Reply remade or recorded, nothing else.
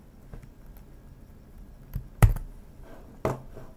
recorded